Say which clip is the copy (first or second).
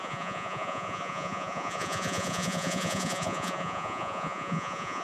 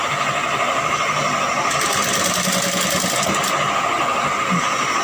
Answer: first